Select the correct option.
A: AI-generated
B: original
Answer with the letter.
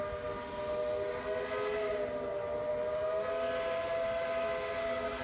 B